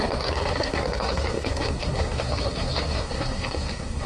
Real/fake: fake